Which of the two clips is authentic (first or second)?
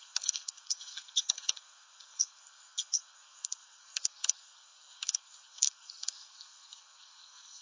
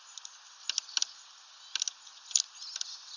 second